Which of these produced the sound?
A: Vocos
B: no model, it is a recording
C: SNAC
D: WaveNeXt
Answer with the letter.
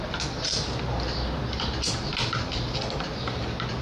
B